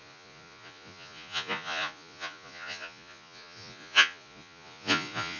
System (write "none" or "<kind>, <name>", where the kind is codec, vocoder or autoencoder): vocoder, Vocos